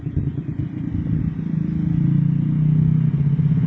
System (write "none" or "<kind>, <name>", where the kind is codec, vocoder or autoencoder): none